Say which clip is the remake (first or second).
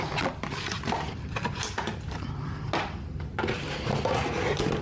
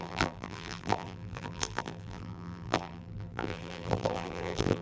second